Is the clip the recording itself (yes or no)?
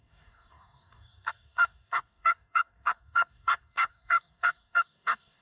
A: no